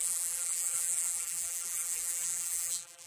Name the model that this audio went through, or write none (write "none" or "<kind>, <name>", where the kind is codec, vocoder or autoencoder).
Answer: vocoder, BigVGAN v2